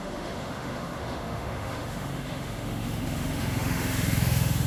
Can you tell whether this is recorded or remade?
remade